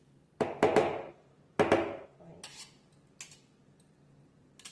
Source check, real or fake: real